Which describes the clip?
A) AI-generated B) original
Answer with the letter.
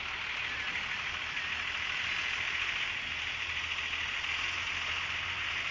B